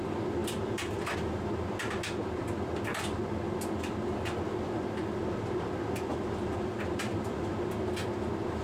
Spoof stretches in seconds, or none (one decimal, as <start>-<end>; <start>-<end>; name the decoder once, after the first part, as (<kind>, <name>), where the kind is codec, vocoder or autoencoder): 0.4-1.4 (vocoder, BigVGAN v2); 6.1-7.6